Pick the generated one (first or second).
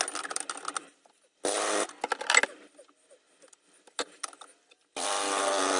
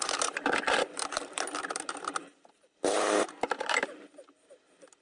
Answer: second